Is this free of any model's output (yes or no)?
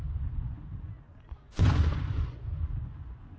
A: no